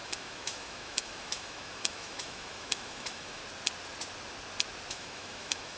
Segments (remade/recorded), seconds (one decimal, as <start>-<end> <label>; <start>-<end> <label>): 0.0-3.4 remade; 3.4-4.9 recorded; 4.9-5.8 remade